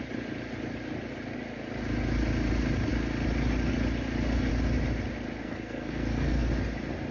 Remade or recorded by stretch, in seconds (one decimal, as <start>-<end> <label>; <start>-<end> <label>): 0.0-5.4 recorded; 5.4-6.5 remade; 6.5-7.1 recorded